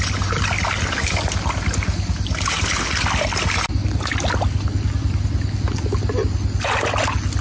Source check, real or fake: real